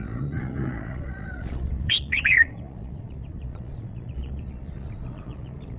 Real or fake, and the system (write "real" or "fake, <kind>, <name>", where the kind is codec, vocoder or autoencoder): fake, vocoder, Vocos